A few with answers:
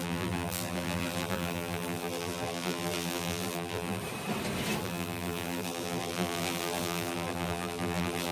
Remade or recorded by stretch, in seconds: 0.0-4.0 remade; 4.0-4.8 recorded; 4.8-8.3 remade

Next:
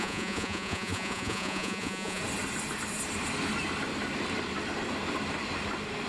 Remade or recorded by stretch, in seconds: 0.0-2.2 remade; 2.2-6.1 recorded